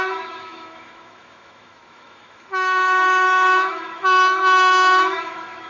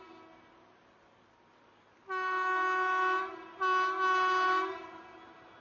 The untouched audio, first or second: second